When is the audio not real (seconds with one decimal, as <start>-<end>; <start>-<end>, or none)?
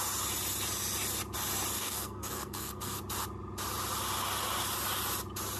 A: 1.8-3.0